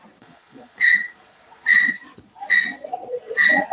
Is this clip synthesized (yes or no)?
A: yes